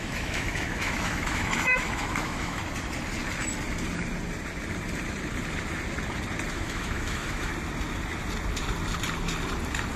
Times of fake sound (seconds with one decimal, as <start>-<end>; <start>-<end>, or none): 0.0-2.6; 6.5-7.5